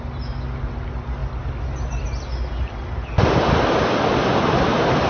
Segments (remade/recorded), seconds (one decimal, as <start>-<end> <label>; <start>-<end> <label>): 0.0-5.1 recorded